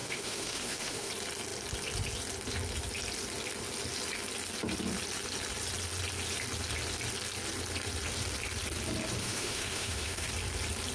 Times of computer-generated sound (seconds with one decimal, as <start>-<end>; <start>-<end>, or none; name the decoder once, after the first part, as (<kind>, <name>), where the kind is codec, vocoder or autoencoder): 0.0-1.1 (autoencoder, DAC-VAE); 9.2-10.3